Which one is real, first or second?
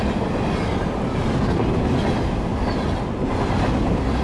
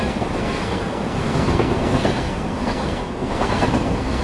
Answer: first